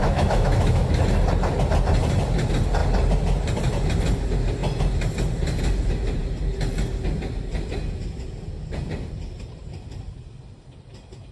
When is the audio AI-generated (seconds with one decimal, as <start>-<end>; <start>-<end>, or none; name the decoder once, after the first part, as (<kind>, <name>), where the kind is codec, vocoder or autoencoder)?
0.0-1.0 (autoencoder, DAC-VAE)